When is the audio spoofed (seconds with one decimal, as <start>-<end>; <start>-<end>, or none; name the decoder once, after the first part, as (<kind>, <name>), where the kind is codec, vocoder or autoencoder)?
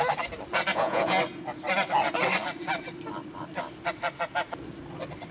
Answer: 0.7-1.2 (vocoder, Vocos)